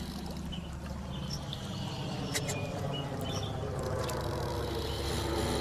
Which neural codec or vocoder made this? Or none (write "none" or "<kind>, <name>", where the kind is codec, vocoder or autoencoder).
none